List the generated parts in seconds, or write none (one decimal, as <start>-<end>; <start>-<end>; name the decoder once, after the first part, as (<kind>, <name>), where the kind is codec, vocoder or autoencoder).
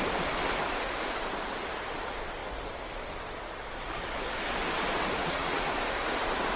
5.2-5.7 (vocoder, Vocos)